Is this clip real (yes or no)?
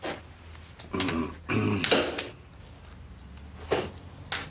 yes